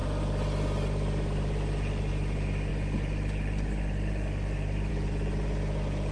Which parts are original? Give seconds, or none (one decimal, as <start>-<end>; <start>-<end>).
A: 0.0-6.1